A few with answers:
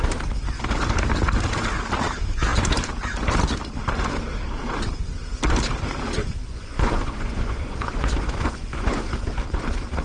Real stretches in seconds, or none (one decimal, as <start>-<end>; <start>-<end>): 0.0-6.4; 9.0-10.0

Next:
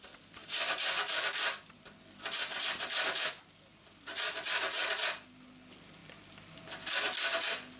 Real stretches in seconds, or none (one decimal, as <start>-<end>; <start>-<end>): 0.0-7.8

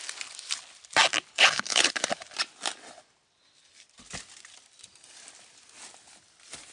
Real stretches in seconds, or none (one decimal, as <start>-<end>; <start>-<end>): 0.0-1.3; 1.9-6.7

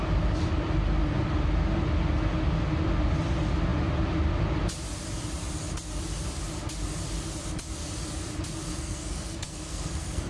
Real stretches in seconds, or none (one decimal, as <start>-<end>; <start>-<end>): 0.0-8.7

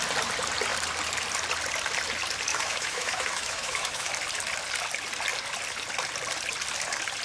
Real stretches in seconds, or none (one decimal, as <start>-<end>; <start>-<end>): 0.0-2.5; 4.1-7.2

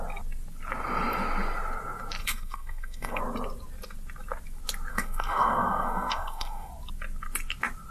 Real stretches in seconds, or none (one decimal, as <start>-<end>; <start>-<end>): 0.0-2.2; 3.2-4.9; 6.7-7.9